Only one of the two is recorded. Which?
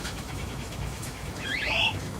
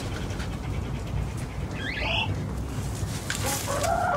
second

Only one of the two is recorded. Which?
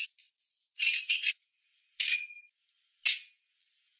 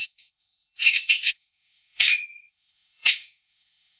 first